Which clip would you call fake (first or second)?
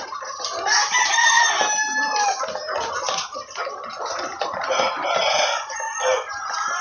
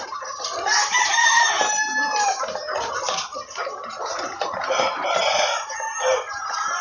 second